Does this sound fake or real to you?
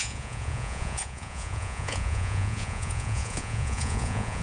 fake